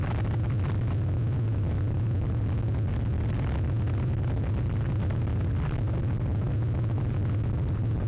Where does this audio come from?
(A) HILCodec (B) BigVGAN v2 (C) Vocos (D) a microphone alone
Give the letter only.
D